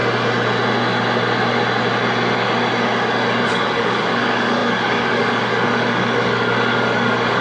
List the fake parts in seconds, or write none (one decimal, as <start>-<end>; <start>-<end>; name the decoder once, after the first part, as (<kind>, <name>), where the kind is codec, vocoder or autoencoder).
3.5-7.4 (codec, DAC)